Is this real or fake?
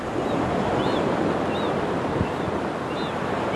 real